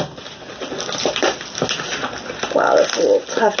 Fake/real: real